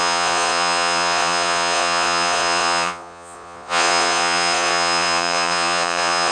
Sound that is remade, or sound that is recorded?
remade